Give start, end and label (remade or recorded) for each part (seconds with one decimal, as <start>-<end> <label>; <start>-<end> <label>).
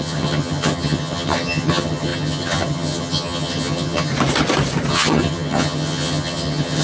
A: 0.0-4.1 remade; 4.1-4.9 recorded; 4.9-6.8 remade